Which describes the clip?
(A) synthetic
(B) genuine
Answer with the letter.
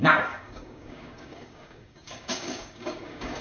A